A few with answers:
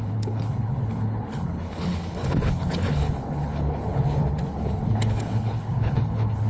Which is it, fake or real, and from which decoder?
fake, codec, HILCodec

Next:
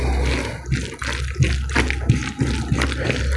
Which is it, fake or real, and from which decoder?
real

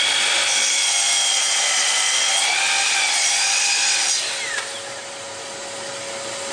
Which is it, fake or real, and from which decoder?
real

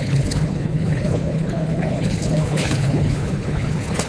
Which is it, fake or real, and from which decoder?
fake, codec, HILCodec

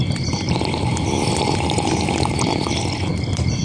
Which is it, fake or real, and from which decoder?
real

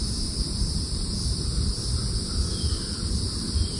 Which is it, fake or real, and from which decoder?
real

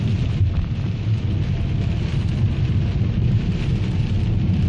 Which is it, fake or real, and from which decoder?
real